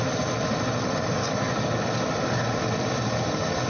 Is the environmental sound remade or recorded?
recorded